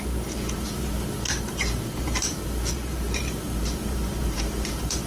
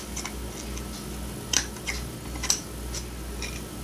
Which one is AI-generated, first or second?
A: first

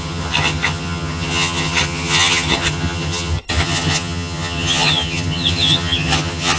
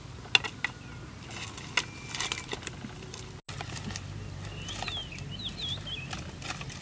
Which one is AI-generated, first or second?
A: first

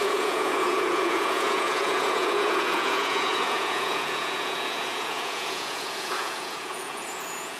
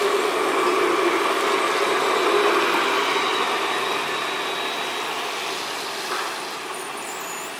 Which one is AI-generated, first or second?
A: first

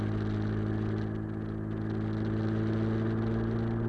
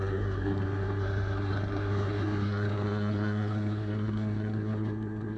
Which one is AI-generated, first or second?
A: second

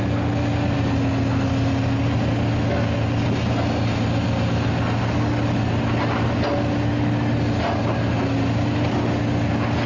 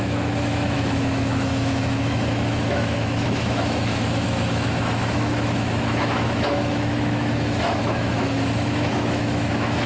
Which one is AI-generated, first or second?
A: second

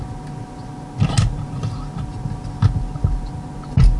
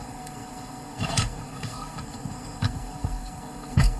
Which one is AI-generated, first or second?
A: second